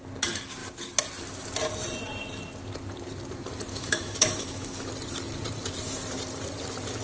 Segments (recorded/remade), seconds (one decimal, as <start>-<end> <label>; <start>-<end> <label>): 0.0-3.7 recorded; 3.7-4.9 remade; 4.9-7.0 recorded